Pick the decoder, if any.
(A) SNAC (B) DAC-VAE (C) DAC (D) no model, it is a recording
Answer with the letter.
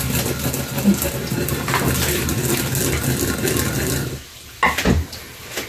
D